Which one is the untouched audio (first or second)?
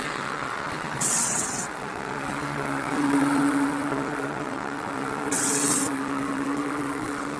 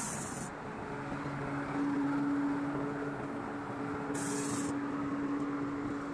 second